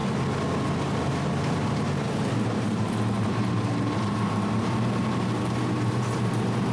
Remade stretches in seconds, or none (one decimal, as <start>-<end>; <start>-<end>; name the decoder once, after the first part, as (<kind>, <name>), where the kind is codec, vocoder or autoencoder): 1.0-6.7 (vocoder, BigVGAN v2)